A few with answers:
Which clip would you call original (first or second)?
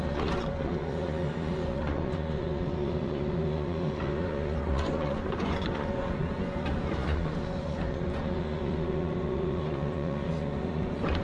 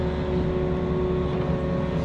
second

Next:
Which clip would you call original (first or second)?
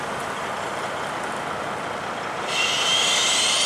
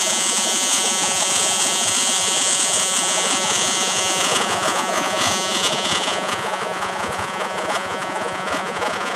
first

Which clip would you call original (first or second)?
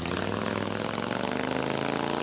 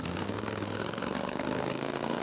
first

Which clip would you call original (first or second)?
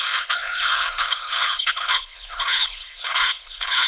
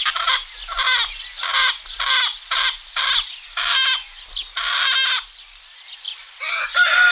second